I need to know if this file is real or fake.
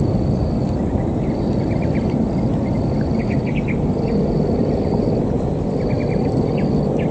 real